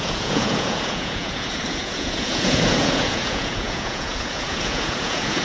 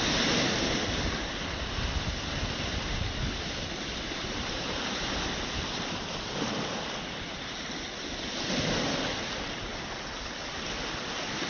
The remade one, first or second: first